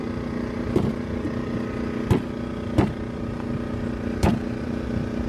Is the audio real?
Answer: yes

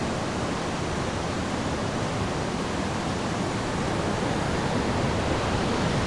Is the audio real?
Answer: yes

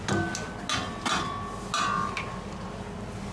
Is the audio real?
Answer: yes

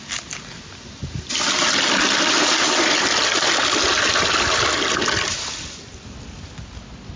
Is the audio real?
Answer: yes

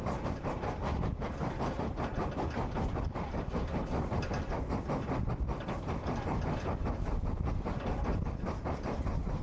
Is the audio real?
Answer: yes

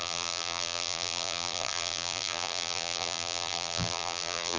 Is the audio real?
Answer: no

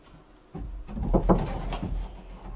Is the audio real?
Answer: yes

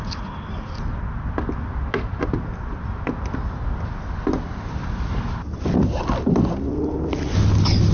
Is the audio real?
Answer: yes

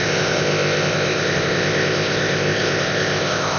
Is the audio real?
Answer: no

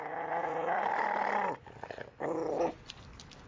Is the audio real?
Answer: no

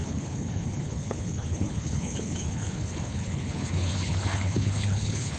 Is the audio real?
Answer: no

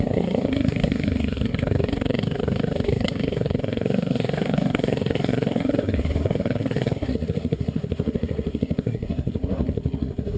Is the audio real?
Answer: no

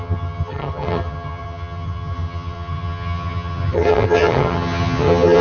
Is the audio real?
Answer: no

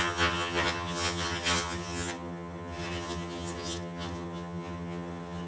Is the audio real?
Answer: no